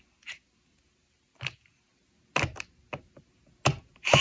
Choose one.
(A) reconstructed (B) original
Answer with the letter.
B